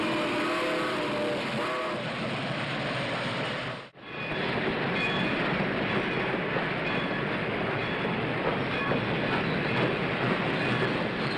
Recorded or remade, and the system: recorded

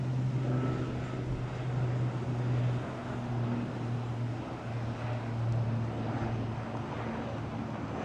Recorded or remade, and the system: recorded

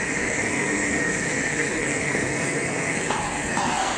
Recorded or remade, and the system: remade, codec, SNAC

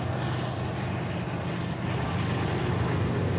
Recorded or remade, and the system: recorded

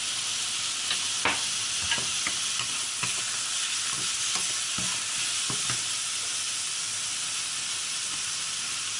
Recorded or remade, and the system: recorded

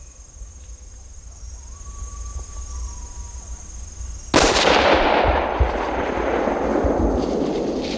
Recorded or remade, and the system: recorded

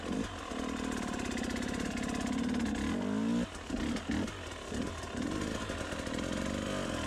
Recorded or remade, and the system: recorded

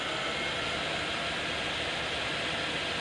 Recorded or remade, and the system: recorded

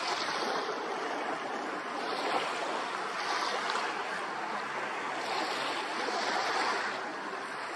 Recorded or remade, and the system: recorded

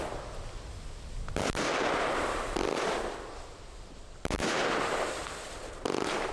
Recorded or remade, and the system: recorded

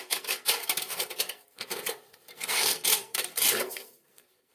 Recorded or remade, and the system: remade, codec, SNAC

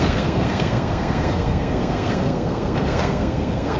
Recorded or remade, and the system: remade, codec, SNAC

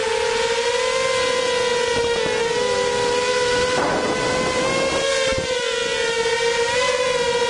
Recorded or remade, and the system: recorded